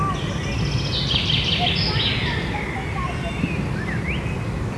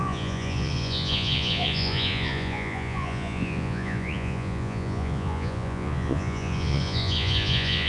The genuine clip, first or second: first